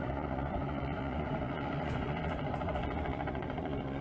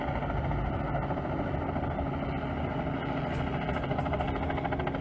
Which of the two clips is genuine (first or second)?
second